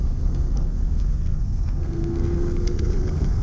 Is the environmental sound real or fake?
fake